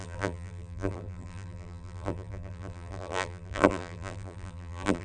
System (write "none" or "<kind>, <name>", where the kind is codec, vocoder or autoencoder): vocoder, BigVGAN v2